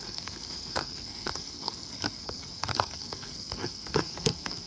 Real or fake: fake